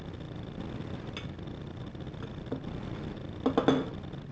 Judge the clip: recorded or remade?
recorded